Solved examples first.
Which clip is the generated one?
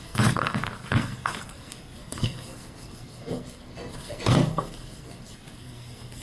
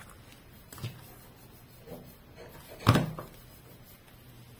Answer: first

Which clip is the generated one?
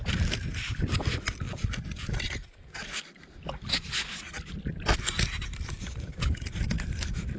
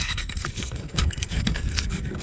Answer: second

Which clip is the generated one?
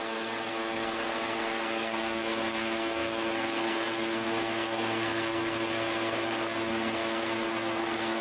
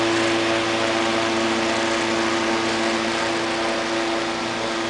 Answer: first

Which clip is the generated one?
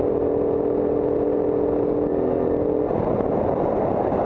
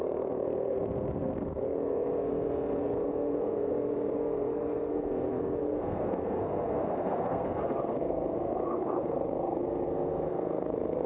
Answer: second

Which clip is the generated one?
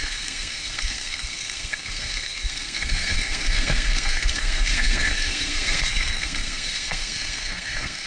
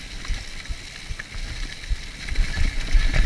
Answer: first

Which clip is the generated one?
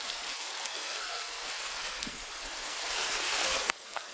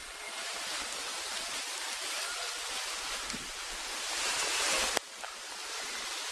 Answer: first